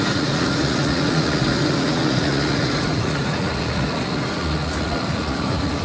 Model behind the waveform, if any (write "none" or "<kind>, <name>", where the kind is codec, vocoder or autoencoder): vocoder, Vocos